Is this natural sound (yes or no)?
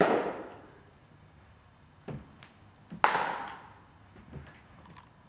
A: yes